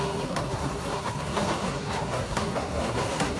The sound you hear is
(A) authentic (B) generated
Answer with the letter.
B